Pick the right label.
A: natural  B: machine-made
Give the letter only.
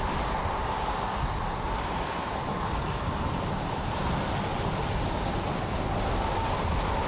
A